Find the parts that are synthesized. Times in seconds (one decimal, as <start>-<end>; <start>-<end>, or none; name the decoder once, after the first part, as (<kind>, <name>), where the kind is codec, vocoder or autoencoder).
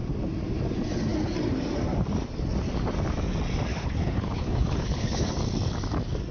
3.7-5.3 (codec, HILCodec)